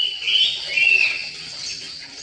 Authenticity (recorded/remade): recorded